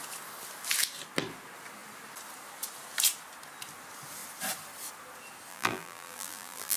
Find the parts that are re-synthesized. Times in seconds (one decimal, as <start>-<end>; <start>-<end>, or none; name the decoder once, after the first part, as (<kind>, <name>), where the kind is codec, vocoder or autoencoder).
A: 5.5-6.8 (vocoder, BigVGAN v2)